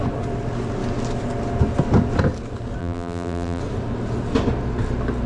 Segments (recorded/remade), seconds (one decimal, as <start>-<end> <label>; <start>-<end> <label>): 0.0-2.8 recorded; 2.8-3.6 remade; 3.6-5.3 recorded